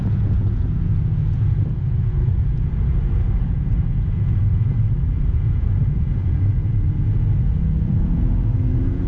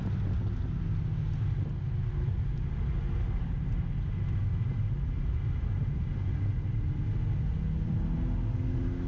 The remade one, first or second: first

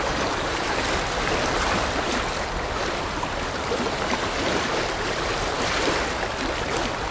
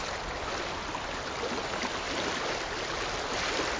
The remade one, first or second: first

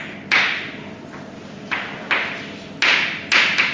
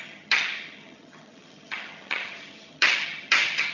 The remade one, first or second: second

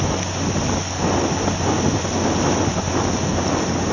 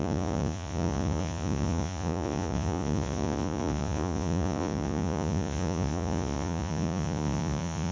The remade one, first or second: second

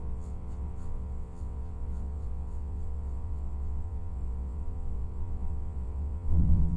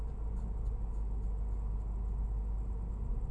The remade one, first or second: first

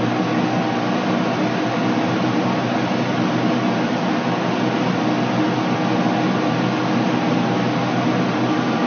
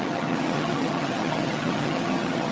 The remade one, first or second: second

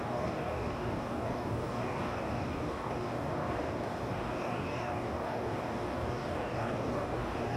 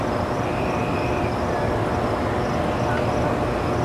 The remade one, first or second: first